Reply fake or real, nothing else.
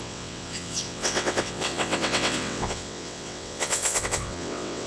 fake